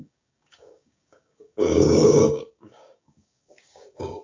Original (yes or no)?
no